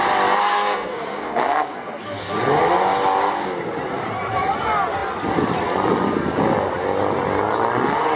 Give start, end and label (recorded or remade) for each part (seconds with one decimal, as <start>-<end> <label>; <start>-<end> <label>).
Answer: 0.0-0.4 recorded; 0.4-2.3 remade; 2.3-8.2 recorded